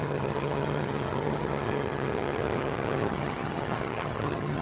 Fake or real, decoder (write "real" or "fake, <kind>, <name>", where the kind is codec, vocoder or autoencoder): fake, vocoder, HiFi-GAN